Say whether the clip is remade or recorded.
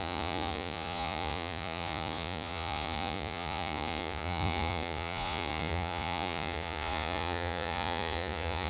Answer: remade